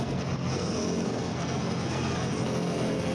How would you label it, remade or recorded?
remade